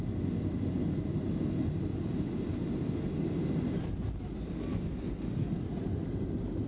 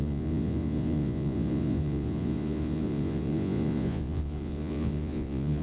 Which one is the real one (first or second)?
first